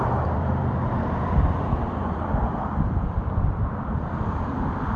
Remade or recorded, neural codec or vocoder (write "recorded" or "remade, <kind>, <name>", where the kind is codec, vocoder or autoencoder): remade, vocoder, BigVGAN v2